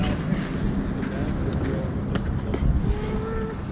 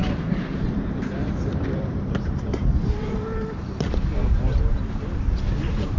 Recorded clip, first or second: first